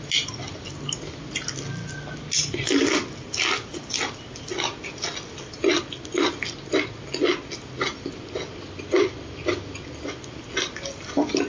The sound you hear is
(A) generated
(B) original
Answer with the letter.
B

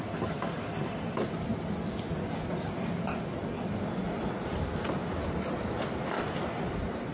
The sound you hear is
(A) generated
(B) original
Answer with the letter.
B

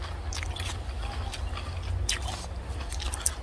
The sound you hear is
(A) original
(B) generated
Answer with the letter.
A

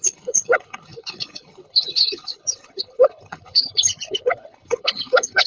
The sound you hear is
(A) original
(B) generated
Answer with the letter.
B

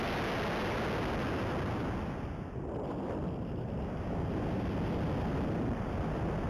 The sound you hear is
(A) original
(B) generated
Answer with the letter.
A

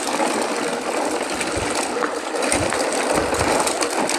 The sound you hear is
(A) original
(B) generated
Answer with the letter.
A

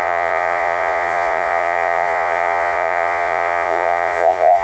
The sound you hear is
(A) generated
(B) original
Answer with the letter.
A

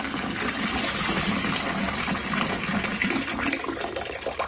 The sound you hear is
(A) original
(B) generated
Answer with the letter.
A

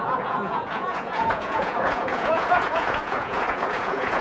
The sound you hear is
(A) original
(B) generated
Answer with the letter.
B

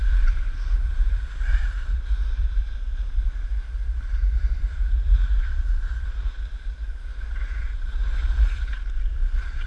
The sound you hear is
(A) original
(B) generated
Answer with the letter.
B